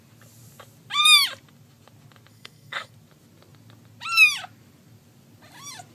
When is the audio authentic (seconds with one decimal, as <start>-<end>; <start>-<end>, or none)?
0.0-2.3; 2.9-5.9